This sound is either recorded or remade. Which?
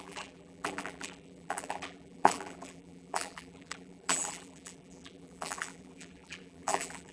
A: remade